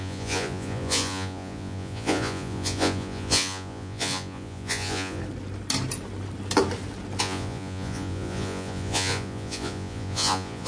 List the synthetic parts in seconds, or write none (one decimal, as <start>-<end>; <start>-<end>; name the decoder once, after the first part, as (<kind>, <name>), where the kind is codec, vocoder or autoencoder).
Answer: 0.0-5.2 (vocoder, Vocos); 7.2-10.7